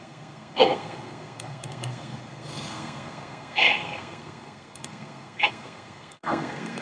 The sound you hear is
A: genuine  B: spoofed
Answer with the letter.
B